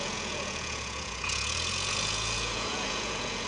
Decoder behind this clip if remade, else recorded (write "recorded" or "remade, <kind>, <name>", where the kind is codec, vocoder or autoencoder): remade, vocoder, Vocos